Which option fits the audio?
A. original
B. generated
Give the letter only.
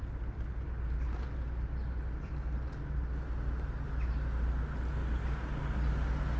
A